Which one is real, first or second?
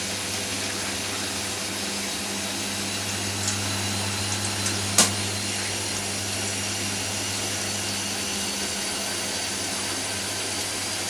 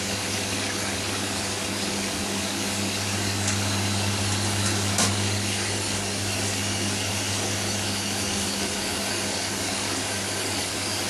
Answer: first